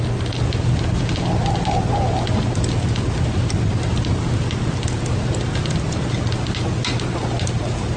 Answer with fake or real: real